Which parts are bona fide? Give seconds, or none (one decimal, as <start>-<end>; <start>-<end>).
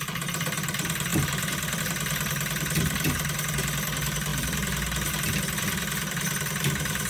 0.0-1.1; 1.8-4.3; 5.1-7.1